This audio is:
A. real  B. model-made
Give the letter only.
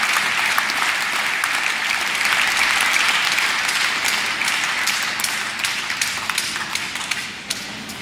A